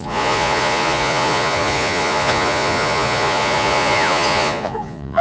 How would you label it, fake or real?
fake